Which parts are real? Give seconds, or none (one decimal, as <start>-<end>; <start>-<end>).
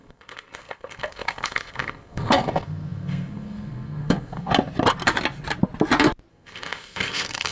4.5-6.3